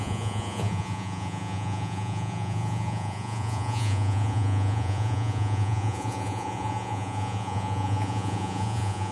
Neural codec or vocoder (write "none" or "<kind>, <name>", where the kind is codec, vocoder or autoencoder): vocoder, Vocos